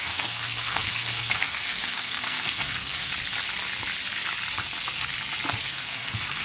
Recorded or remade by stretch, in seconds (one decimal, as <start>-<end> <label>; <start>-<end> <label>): 0.0-3.1 remade; 3.1-5.6 recorded; 5.6-6.4 remade

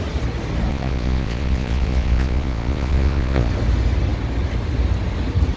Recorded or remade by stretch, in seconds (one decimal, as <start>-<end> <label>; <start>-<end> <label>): 0.0-0.7 recorded; 0.7-3.5 remade; 3.5-5.6 recorded

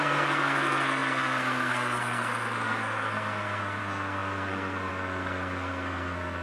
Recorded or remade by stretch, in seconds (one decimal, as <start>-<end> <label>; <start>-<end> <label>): 0.0-6.4 remade

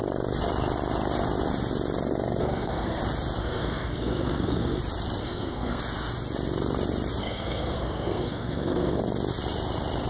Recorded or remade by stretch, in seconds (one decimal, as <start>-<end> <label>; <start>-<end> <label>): 0.0-2.4 recorded; 2.4-3.0 remade; 3.0-3.4 recorded; 3.4-4.8 remade; 4.8-5.2 recorded; 5.2-5.8 remade; 5.8-7.2 recorded; 7.2-9.0 remade; 9.0-10.1 recorded

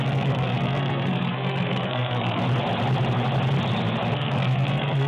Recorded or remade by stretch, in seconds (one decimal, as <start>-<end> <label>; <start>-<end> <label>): 0.0-2.4 remade; 2.4-4.1 recorded; 4.1-5.1 remade

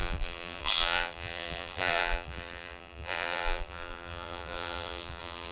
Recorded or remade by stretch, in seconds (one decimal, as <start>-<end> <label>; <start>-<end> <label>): 0.0-5.5 remade

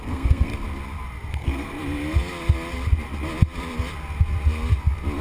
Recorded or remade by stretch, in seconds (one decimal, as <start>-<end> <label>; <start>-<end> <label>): 0.0-0.5 remade; 0.5-1.3 recorded; 1.3-1.8 remade; 1.8-5.2 recorded